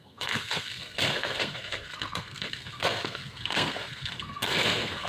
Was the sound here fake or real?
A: fake